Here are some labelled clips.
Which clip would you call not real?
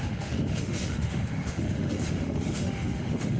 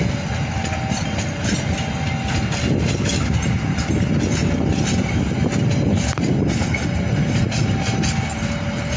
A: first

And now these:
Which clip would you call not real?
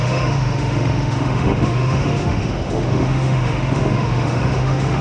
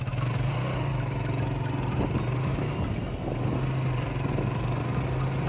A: first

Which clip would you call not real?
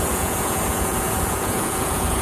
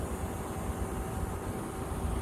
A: first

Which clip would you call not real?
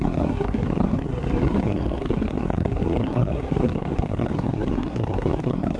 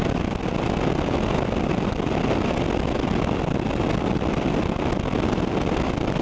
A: first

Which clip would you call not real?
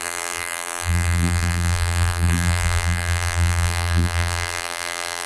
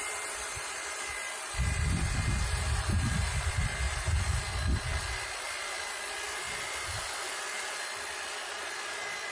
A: first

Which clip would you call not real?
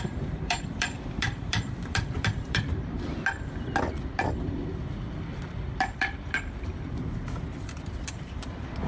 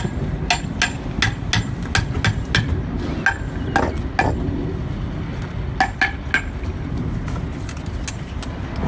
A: first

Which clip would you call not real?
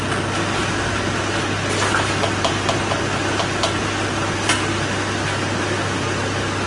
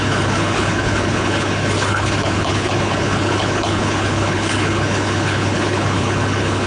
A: second